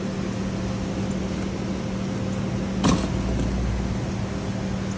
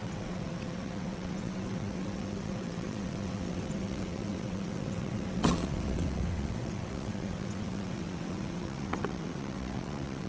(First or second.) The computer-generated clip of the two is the second